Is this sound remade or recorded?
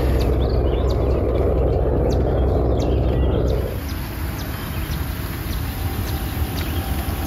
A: recorded